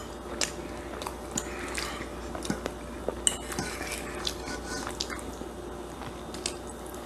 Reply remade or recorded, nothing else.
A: recorded